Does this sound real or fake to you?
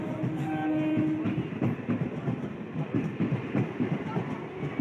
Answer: real